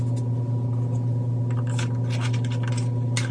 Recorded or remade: recorded